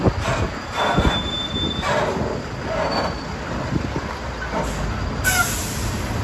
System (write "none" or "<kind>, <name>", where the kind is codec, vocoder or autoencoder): none